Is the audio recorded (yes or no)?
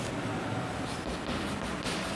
yes